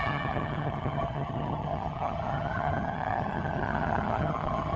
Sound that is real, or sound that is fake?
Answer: fake